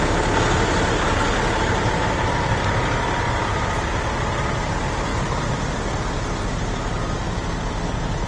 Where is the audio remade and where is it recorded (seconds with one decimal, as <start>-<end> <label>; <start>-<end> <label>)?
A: 0.0-8.3 recorded

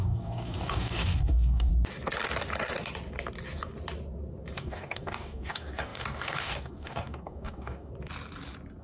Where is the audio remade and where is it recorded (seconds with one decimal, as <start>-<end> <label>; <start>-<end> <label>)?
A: 0.0-1.7 remade; 1.7-4.6 recorded; 4.6-7.9 remade; 7.9-8.8 recorded

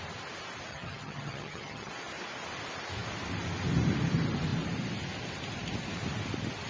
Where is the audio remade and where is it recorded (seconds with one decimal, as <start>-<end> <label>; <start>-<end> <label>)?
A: 0.0-0.7 recorded; 0.7-1.9 remade; 1.9-6.7 recorded

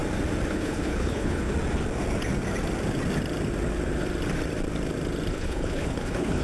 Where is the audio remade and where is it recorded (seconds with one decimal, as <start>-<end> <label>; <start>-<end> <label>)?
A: 0.0-0.5 recorded; 0.5-1.5 remade; 1.5-5.3 recorded; 5.3-6.4 remade

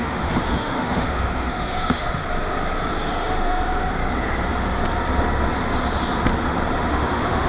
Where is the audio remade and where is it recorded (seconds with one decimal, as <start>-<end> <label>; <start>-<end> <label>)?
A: 0.0-2.2 remade; 2.2-3.1 recorded; 3.1-3.9 remade; 3.9-6.9 recorded; 6.9-7.5 remade